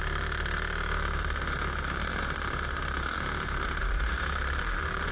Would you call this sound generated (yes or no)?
yes